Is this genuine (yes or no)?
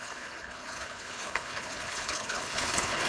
no